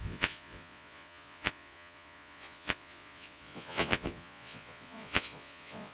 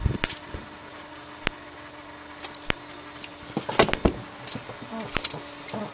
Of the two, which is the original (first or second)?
second